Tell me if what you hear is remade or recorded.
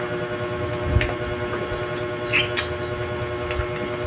recorded